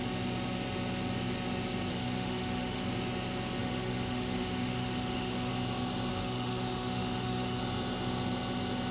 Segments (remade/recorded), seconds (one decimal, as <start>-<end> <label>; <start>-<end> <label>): 0.0-1.9 recorded; 1.9-2.8 remade; 2.8-3.6 recorded; 3.6-5.5 remade; 5.5-6.1 recorded; 6.1-7.6 remade; 7.6-8.9 recorded